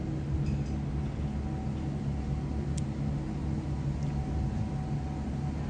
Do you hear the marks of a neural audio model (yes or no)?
no